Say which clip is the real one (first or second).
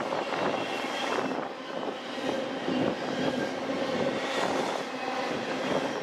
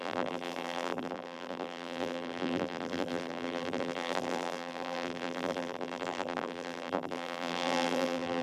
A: first